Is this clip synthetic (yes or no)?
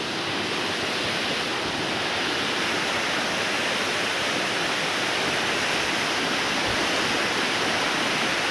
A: no